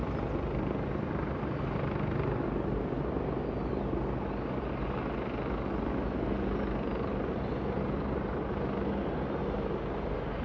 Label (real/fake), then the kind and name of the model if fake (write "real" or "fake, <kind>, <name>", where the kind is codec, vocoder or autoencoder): real